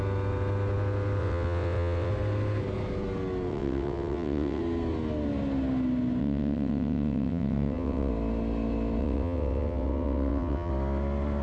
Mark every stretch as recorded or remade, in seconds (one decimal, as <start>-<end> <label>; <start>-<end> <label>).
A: 0.0-1.2 recorded; 1.2-2.1 remade; 2.1-3.5 recorded; 3.5-4.6 remade; 4.6-6.2 recorded; 6.2-8.1 remade; 8.1-9.0 recorded; 9.0-10.7 remade; 10.7-11.4 recorded